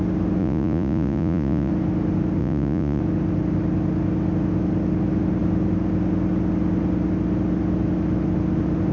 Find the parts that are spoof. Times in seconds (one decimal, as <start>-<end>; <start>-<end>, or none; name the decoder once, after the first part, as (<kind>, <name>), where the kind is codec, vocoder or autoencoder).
0.4-1.7 (vocoder, Vocos); 2.4-3.0